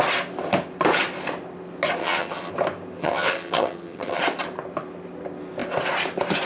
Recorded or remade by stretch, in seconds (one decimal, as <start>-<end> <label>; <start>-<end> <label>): 0.0-2.0 recorded; 2.0-2.5 remade; 2.5-3.0 recorded; 3.0-4.2 remade; 4.2-6.5 recorded